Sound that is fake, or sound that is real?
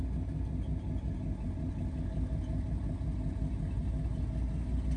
real